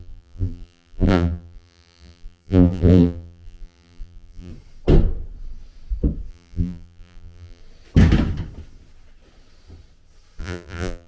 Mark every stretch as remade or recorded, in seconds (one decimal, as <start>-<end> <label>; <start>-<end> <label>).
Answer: 0.0-4.5 remade; 4.5-6.3 recorded; 6.3-7.6 remade; 7.6-10.4 recorded; 10.4-11.1 remade